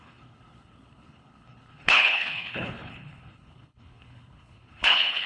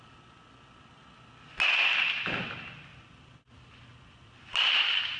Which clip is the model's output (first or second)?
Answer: first